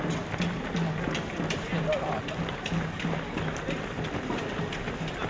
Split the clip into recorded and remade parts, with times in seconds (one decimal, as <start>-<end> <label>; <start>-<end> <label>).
0.0-5.3 recorded